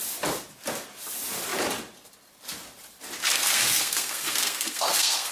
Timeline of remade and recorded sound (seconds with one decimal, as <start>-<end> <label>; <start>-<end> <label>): 0.0-3.2 recorded; 3.2-5.3 remade